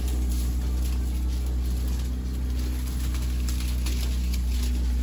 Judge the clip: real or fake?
real